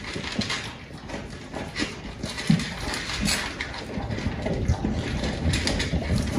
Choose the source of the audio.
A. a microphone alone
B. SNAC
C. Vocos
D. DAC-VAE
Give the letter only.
A